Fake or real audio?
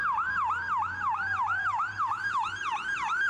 real